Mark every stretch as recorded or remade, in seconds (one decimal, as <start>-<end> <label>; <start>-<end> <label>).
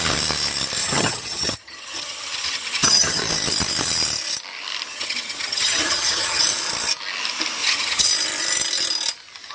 0.0-0.8 recorded; 0.8-3.2 remade; 3.2-4.9 recorded; 4.9-6.4 remade; 6.4-7.6 recorded; 7.6-8.1 remade; 8.1-9.5 recorded